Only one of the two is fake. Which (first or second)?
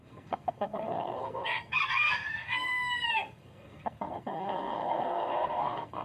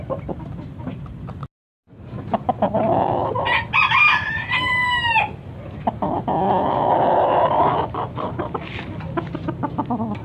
first